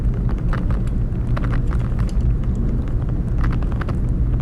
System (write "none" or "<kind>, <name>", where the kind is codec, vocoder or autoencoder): none